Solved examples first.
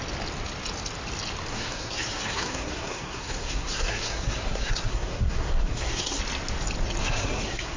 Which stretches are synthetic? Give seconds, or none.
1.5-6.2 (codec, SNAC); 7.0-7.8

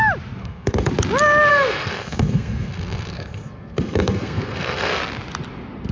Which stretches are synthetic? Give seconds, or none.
0.4-0.9 (codec, SNAC); 1.5-5.0

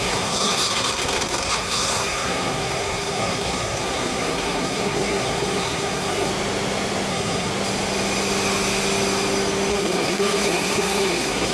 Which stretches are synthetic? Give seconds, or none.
0.0-6.3 (codec, SNAC); 7.1-7.5; 9.7-11.5

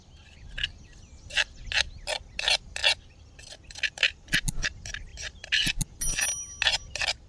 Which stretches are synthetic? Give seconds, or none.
none